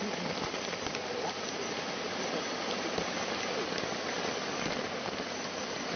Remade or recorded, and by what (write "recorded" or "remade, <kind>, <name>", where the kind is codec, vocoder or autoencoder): recorded